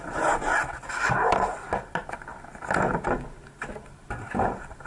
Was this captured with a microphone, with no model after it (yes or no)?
yes